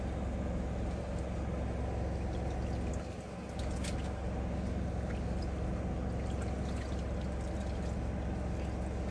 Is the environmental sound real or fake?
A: real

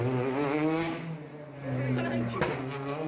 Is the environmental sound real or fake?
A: real